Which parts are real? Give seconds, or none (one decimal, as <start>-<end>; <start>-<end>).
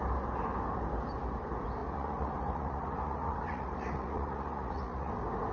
0.0-1.8; 5.1-5.5